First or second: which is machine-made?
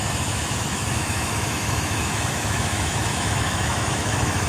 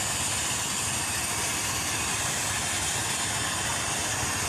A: first